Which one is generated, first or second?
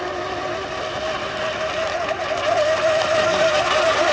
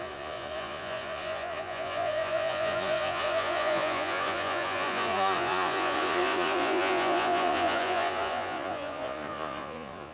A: second